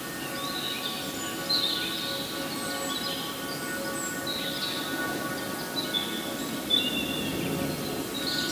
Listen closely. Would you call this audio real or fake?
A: real